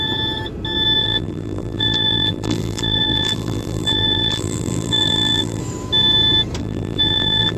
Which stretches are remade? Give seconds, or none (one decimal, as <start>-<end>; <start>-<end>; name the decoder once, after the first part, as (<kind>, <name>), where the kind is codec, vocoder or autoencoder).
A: 1.0-5.6 (vocoder, BigVGAN v2); 6.6-7.6